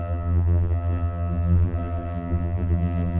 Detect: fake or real fake